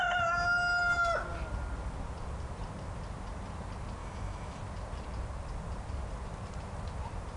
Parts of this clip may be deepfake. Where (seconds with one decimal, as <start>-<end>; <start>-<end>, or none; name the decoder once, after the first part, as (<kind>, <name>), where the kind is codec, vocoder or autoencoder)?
4.0-4.6 (autoencoder, DAC-VAE)